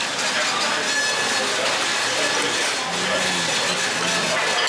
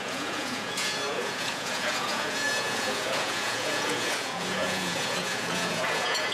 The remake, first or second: second